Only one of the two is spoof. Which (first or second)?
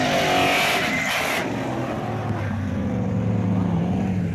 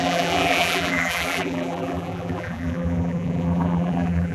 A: second